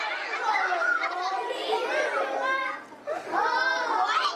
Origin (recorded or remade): recorded